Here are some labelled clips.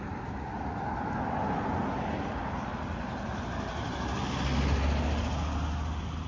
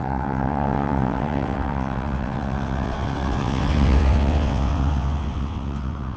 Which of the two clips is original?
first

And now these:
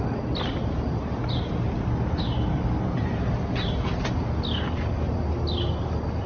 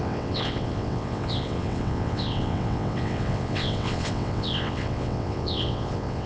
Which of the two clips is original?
first